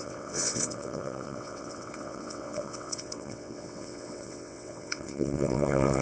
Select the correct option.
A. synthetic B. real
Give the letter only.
A